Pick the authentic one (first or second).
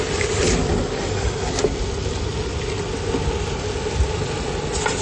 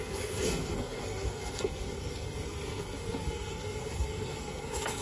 first